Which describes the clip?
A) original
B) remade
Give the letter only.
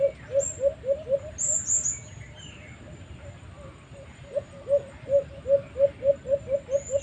A